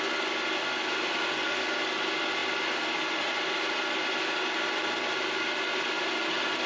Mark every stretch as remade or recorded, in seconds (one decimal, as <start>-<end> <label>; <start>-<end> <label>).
0.0-2.4 recorded; 2.4-6.7 remade